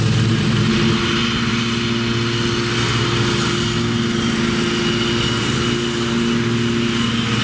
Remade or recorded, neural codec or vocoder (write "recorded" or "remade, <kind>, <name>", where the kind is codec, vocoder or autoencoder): recorded